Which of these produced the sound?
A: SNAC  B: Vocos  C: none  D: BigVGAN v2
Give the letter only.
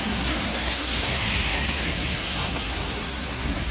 A